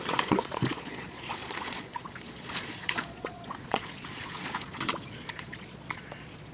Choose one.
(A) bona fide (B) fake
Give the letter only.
B